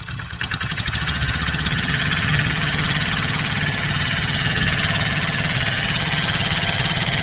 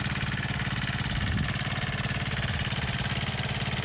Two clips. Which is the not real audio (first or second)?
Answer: first